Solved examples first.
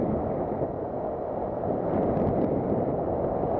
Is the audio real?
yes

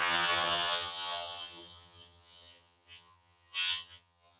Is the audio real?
no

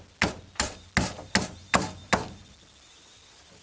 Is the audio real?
yes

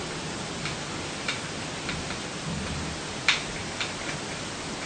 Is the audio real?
yes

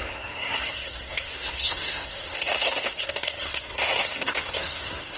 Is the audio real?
no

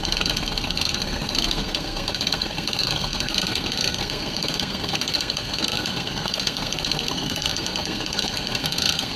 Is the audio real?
no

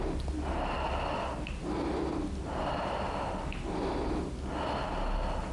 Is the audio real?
yes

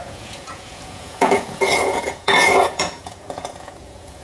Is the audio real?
no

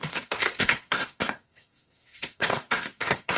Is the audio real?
no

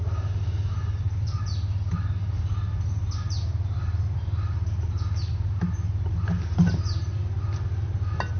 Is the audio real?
yes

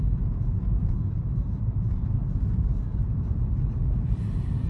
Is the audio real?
no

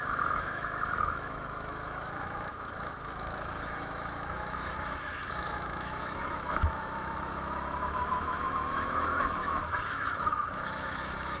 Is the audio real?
no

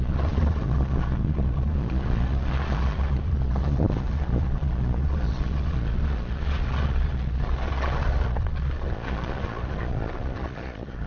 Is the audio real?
no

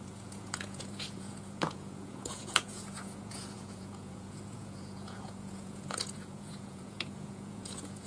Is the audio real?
no